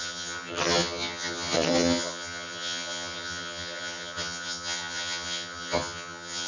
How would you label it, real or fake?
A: fake